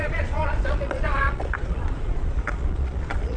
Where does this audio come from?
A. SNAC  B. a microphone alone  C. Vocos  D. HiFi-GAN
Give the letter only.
C